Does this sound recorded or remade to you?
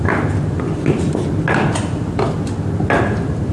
recorded